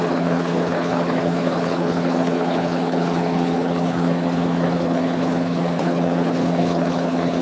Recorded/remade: remade